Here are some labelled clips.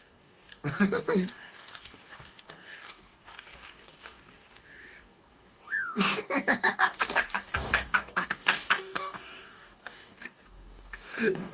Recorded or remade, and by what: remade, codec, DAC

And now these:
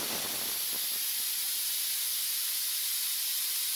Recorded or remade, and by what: recorded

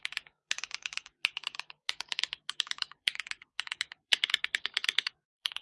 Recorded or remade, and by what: remade, codec, DAC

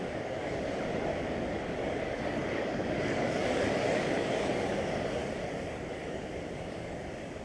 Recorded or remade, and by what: remade, codec, DAC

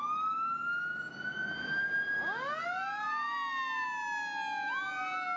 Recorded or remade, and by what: recorded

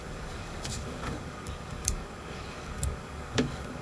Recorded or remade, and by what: remade, codec, DAC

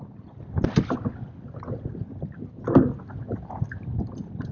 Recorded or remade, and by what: recorded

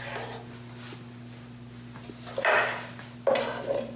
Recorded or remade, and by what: recorded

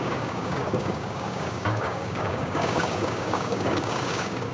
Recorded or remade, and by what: remade, codec, DAC